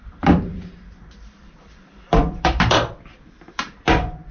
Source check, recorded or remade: remade